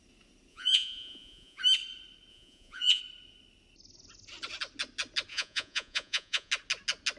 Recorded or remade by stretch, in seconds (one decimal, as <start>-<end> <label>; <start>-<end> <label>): 0.0-0.5 recorded; 0.5-1.6 remade; 1.6-2.3 recorded; 2.3-3.0 remade; 3.0-5.3 recorded; 5.3-6.5 remade; 6.5-7.2 recorded